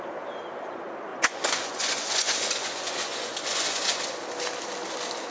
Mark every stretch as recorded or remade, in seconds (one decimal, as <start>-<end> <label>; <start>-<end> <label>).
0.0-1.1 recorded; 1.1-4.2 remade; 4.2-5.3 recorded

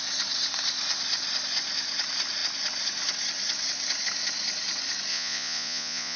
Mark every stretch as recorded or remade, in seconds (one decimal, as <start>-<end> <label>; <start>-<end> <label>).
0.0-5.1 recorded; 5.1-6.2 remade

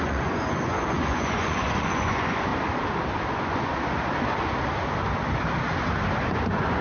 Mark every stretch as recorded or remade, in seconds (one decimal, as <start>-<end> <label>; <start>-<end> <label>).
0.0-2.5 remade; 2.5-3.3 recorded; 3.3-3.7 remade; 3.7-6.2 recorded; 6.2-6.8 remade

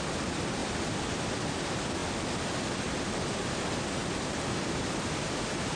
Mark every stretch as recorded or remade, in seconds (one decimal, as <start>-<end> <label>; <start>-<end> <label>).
0.0-0.6 recorded; 0.6-1.6 remade; 1.6-2.0 recorded; 2.0-2.7 remade; 2.7-4.0 recorded; 4.0-5.8 remade

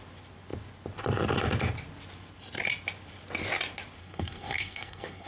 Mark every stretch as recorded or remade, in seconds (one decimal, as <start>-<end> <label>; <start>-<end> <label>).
0.0-4.0 recorded; 4.0-5.3 remade

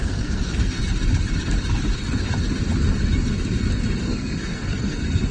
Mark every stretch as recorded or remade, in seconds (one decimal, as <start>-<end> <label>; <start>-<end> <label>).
0.0-0.8 remade; 0.8-4.0 recorded; 4.0-5.3 remade

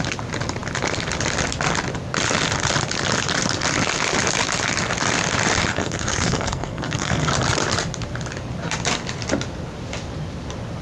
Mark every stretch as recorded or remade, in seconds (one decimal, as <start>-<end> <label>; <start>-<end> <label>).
0.0-5.7 recorded; 5.7-7.3 remade; 7.3-10.8 recorded